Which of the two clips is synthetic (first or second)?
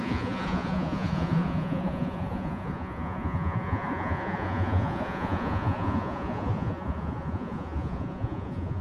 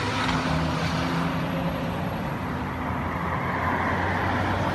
first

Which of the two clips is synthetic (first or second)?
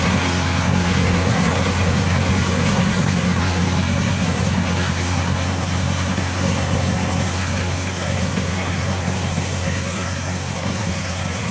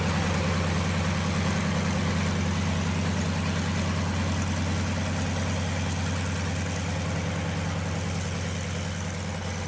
first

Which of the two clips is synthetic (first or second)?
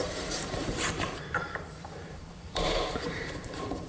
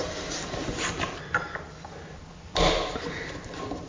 first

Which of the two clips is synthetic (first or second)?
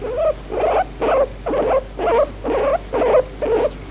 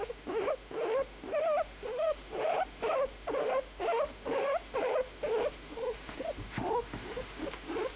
second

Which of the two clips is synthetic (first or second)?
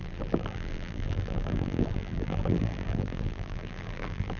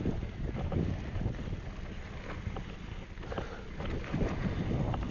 first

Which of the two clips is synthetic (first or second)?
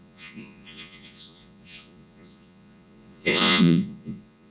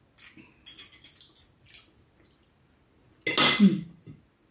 first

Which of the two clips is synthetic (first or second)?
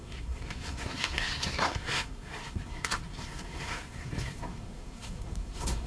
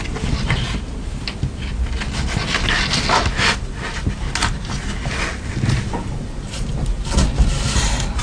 first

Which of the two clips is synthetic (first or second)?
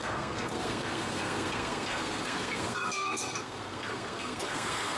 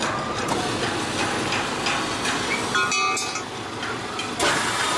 first